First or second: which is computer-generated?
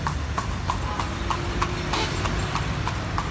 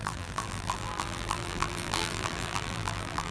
second